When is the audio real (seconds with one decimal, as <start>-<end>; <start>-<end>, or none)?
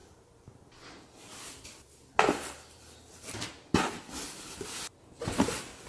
0.0-5.9